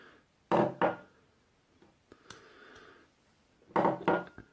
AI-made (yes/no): no